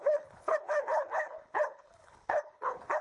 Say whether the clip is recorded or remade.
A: remade